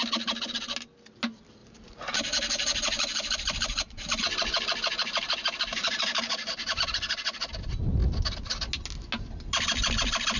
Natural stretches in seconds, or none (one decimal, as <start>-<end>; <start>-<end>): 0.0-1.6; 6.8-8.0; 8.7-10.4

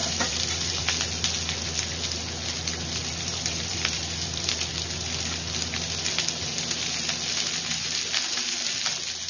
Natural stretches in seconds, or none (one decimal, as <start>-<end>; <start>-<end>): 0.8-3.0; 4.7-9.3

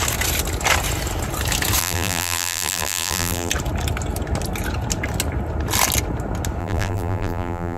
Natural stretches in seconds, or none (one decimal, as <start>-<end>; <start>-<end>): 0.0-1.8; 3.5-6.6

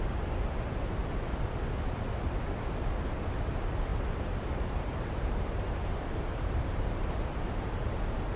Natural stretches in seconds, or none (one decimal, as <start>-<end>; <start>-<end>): 0.0-3.9

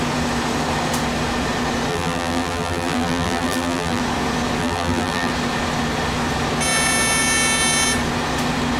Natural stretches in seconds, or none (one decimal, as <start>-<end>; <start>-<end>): 0.0-1.9; 4.0-4.6; 5.3-8.8

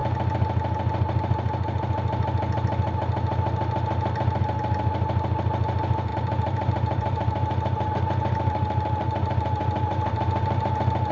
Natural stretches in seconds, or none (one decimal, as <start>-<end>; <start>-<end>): 0.0-6.1